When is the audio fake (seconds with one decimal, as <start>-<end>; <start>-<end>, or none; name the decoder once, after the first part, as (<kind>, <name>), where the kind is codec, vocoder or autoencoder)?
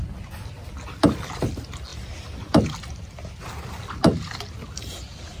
none